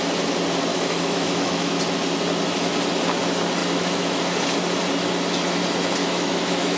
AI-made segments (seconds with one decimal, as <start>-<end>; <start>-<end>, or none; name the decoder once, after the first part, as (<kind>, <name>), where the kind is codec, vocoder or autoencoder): 0.7-1.8 (autoencoder, DAC-VAE); 3.6-4.2; 6.0-6.8